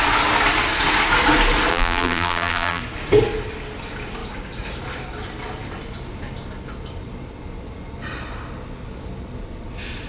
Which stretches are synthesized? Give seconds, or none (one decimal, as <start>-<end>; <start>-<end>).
1.7-2.8

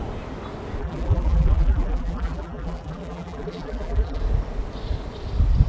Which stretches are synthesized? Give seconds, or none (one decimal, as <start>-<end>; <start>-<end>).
0.8-4.2

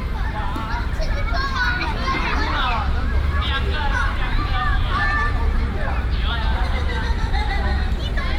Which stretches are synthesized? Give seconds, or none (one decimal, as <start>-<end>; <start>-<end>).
0.0-8.4

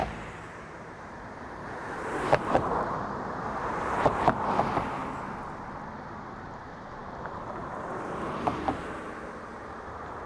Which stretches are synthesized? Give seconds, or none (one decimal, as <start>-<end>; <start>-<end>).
0.0-5.0; 6.3-10.3

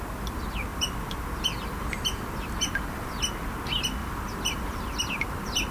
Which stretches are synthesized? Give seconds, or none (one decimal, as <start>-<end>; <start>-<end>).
0.7-3.3; 4.0-5.7

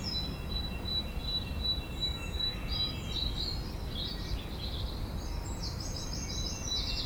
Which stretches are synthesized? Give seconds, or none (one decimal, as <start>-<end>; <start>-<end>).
none